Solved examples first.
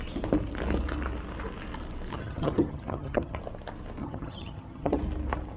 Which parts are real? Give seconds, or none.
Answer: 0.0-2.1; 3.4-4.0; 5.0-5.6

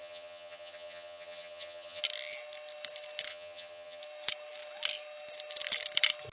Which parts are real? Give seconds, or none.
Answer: 2.0-3.3; 4.0-6.3

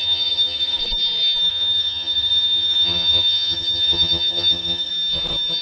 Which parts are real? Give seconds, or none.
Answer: 0.8-1.5; 4.9-5.6

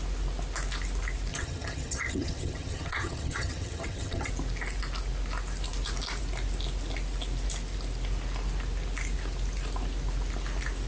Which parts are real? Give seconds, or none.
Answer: 0.0-1.3; 4.3-10.9

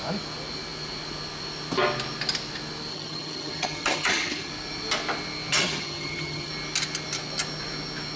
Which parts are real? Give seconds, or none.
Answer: 0.0-2.9; 4.5-5.5; 6.5-8.2